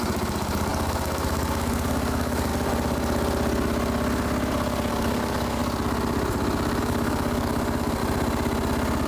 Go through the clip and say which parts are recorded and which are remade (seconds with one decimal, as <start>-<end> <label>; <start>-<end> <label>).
0.0-2.5 remade; 2.5-4.9 recorded; 4.9-5.6 remade; 5.6-6.8 recorded; 6.8-8.0 remade; 8.0-9.1 recorded